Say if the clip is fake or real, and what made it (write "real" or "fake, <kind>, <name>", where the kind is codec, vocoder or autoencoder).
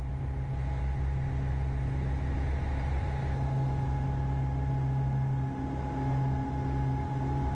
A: real